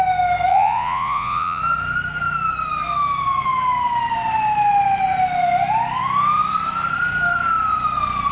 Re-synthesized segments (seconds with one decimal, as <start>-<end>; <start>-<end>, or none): 0.5-1.6